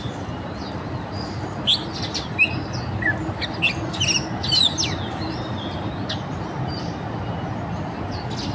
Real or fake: real